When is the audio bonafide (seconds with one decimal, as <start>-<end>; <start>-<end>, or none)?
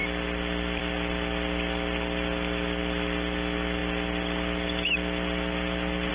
0.0-6.1